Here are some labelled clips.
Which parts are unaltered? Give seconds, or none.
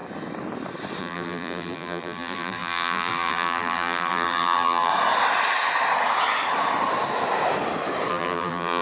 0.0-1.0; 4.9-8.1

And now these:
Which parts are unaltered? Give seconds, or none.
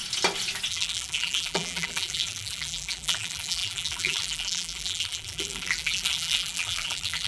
0.0-0.7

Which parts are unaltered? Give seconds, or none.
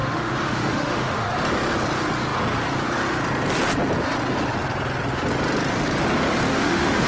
1.3-6.5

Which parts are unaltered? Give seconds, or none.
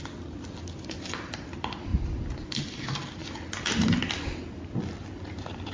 0.0-5.7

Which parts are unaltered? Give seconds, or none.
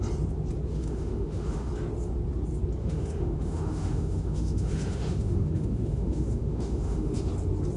0.0-0.7; 1.7-2.8; 7.3-7.8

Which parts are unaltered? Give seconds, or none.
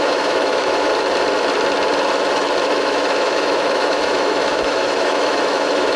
0.9-2.6